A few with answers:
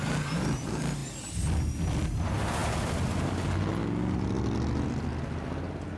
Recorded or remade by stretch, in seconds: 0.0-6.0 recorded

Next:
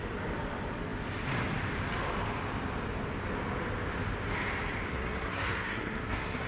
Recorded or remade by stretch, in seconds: 0.0-4.9 recorded; 4.9-6.5 remade

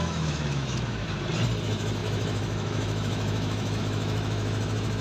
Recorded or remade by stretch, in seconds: 0.0-1.0 remade; 1.0-1.6 recorded; 1.6-5.0 remade

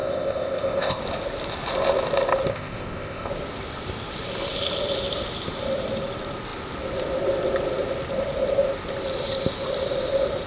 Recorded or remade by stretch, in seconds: 0.0-1.0 remade; 1.0-2.5 recorded; 2.5-3.3 remade; 3.3-10.5 recorded

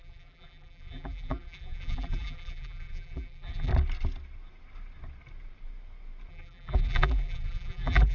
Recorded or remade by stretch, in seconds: 0.0-3.7 remade; 3.7-6.3 recorded; 6.3-8.1 remade

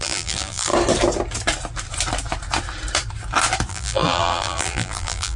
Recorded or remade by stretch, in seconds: 0.0-0.7 remade; 0.7-3.7 recorded; 3.7-5.4 remade